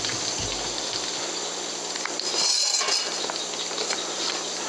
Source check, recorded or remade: recorded